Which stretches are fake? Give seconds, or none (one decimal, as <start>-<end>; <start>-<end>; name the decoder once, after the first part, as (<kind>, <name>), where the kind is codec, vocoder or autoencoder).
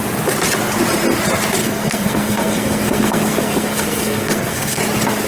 1.6-4.8 (codec, SNAC)